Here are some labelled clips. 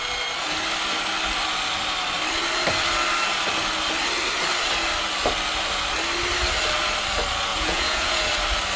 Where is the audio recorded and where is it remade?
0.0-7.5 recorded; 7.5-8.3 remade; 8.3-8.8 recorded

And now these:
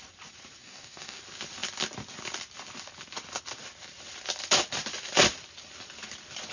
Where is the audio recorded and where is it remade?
0.0-0.6 recorded; 0.6-1.2 remade; 1.2-6.5 recorded